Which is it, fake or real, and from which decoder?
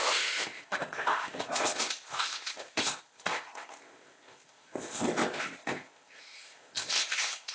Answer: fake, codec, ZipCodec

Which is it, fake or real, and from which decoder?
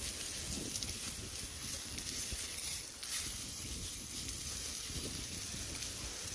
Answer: fake, vocoder, BigVGAN v2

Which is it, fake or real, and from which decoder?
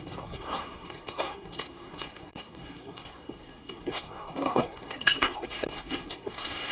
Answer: fake, codec, SNAC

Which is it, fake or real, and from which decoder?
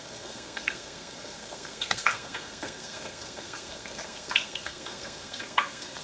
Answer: fake, codec, SNAC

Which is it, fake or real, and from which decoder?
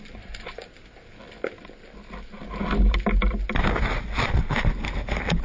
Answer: real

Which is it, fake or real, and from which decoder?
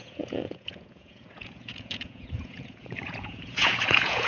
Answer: fake, vocoder, Vocos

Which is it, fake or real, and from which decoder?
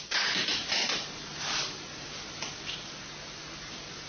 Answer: real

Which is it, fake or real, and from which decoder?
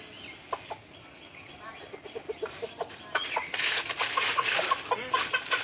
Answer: real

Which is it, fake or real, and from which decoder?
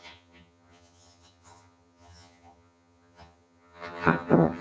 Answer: fake, vocoder, HiFi-GAN